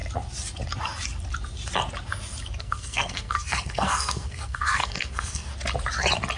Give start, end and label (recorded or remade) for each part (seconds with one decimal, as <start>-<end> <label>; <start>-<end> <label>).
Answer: 0.0-2.6 recorded; 2.6-5.5 remade; 5.5-6.4 recorded